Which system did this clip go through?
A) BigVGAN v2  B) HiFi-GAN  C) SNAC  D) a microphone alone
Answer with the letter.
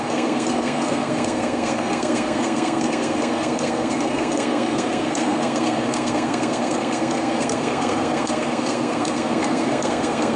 C